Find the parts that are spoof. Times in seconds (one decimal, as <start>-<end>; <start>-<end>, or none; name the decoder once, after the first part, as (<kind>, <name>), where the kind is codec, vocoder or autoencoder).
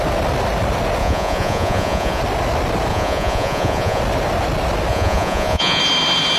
1.0-2.2 (vocoder, Vocos); 2.9-4.0; 4.9-5.8